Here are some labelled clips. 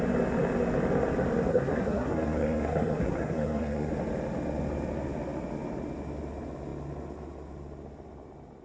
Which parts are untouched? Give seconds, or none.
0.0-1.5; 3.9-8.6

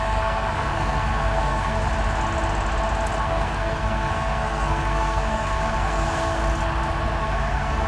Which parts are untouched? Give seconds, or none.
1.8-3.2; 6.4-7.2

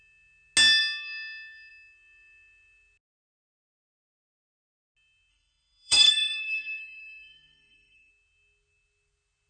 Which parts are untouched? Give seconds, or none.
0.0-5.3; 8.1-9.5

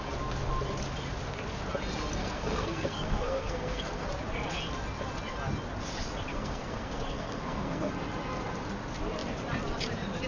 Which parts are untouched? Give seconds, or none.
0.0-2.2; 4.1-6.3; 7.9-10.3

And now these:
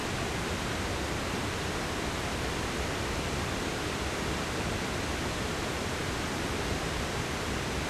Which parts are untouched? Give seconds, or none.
0.0-7.9

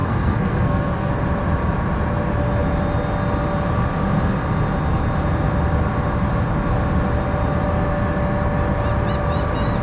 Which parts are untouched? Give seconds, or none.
1.1-9.8